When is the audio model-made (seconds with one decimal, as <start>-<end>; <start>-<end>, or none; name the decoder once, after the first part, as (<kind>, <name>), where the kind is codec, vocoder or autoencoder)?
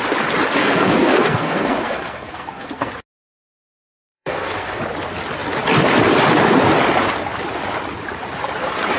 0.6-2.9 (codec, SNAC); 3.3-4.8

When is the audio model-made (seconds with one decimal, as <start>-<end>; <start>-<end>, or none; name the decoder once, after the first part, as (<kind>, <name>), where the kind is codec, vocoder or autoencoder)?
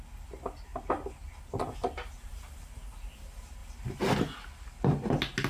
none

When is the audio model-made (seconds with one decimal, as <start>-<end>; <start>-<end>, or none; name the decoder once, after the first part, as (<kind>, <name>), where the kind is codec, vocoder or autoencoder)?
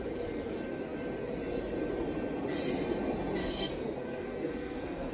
3.4-5.1 (codec, SNAC)